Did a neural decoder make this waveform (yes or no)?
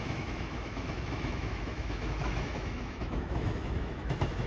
yes